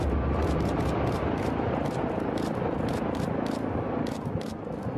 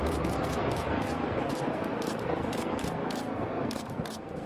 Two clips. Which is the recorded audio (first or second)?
first